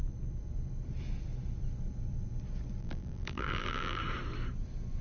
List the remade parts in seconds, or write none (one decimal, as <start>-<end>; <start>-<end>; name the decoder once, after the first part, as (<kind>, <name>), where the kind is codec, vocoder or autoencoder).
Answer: 2.8-4.0 (vocoder, BigVGAN v2)